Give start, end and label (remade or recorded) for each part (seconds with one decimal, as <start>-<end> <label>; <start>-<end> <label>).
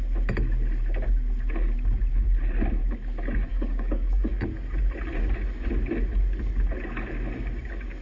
0.0-3.5 recorded; 3.5-4.3 remade; 4.3-8.0 recorded